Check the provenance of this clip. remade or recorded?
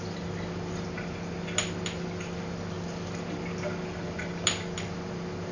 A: recorded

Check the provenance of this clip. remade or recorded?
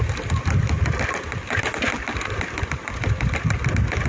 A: recorded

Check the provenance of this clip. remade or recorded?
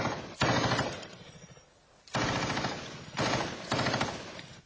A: remade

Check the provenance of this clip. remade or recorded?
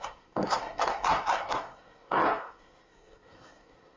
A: remade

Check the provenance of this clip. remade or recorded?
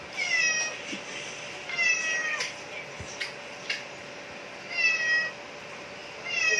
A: recorded